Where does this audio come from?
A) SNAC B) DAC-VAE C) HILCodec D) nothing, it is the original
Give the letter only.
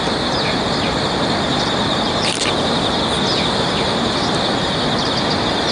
D